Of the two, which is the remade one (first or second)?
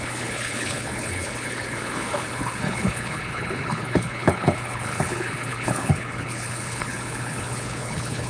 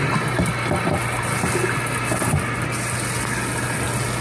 first